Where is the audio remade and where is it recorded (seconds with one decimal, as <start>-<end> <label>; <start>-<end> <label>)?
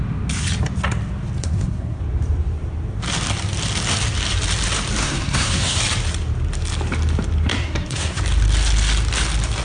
0.0-1.4 recorded; 1.4-2.0 remade; 2.0-5.0 recorded; 5.0-5.8 remade; 5.8-7.5 recorded; 7.5-8.2 remade; 8.2-9.6 recorded